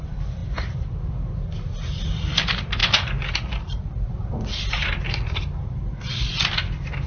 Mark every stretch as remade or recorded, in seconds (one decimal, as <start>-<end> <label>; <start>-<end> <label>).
0.0-7.1 recorded